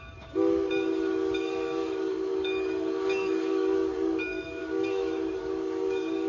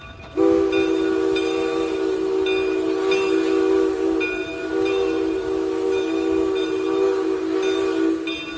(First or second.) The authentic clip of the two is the second